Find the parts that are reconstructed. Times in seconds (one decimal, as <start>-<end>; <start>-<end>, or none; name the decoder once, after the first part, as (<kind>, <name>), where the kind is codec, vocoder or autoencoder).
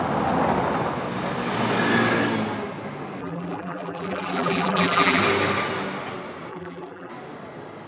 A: 3.2-5.2 (vocoder, BigVGAN v2); 6.5-7.1